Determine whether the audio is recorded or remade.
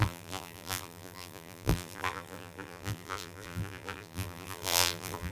remade